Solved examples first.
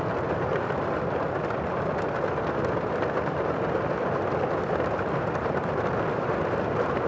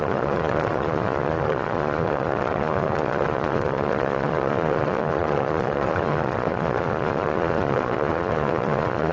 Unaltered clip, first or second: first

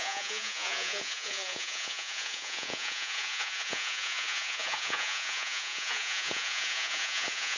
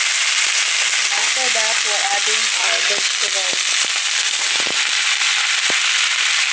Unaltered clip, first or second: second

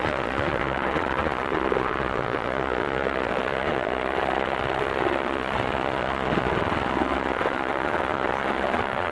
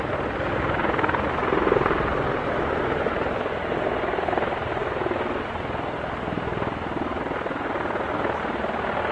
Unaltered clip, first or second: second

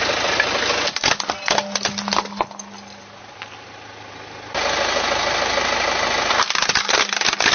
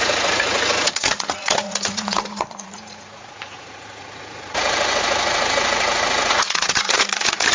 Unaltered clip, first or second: first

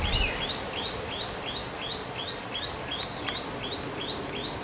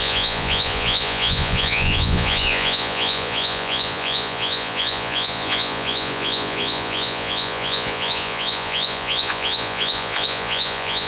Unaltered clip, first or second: first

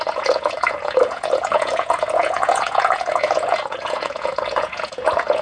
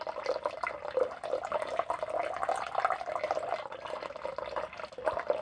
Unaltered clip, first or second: second